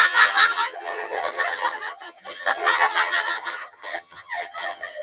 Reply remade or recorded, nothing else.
remade